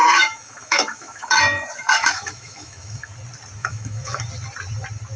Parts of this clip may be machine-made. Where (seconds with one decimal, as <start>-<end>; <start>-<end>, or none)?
0.0-3.1; 3.6-4.2